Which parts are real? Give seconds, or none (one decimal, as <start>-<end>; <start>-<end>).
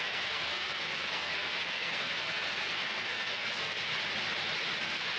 3.9-4.8